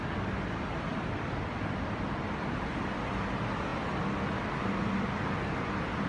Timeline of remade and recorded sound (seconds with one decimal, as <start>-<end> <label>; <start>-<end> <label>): 0.0-0.9 recorded; 0.9-3.0 remade; 3.0-3.7 recorded; 3.7-5.3 remade; 5.3-6.1 recorded